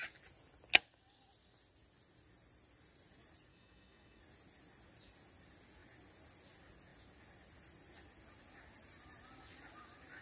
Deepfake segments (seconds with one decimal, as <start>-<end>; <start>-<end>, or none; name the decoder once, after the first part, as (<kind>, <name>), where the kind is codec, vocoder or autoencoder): 3.5-4.2 (autoencoder, DAC-VAE)